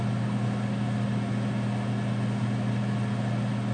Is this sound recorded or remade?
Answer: recorded